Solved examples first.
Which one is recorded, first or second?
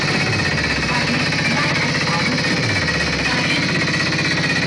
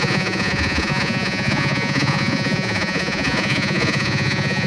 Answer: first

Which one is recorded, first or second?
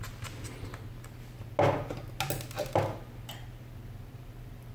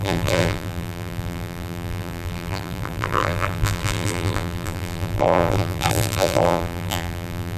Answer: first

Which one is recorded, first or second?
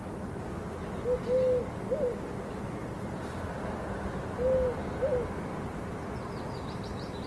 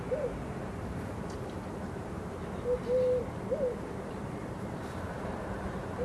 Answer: first